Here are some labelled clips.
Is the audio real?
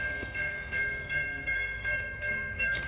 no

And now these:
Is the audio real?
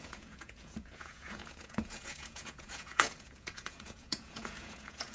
no